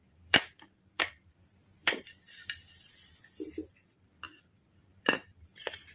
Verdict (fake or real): fake